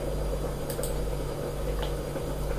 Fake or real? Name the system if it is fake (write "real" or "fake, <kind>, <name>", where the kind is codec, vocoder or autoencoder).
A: real